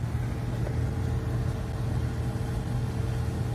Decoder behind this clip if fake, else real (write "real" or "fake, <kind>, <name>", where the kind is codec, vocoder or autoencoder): real